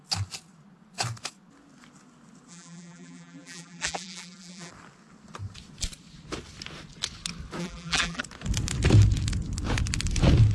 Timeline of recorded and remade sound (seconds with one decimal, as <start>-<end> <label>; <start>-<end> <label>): 0.0-2.5 recorded; 2.5-4.7 remade; 4.7-7.6 recorded; 7.6-8.2 remade; 8.2-10.5 recorded